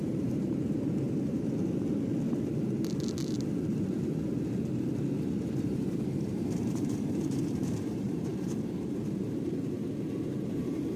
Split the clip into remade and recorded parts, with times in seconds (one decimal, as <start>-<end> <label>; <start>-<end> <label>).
0.0-1.6 remade; 1.6-5.4 recorded; 5.4-11.0 remade